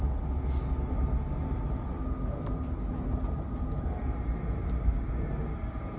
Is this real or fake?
real